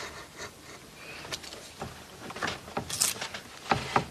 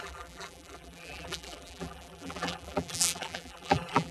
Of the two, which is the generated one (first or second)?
second